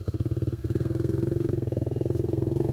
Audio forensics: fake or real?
fake